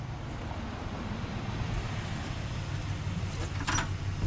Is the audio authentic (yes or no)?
no